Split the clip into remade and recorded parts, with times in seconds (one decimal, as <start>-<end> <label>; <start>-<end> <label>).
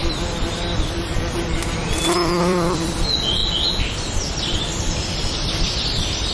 0.0-2.4 recorded; 2.4-3.4 remade; 3.4-4.6 recorded; 4.6-6.3 remade